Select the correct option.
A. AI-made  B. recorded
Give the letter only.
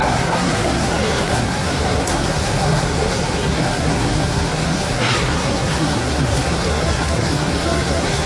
A